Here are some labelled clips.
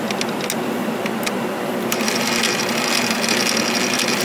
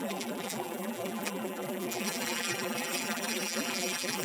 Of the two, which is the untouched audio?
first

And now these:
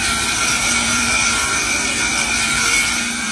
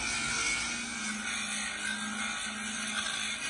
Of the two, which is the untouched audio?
second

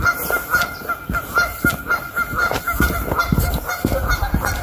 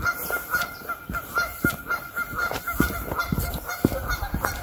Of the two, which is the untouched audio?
first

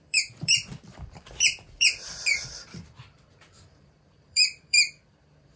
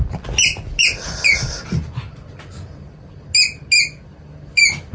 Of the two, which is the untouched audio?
second